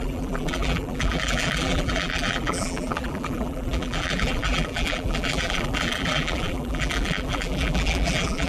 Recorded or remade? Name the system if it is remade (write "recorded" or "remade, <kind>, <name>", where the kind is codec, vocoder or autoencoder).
remade, vocoder, BigVGAN v2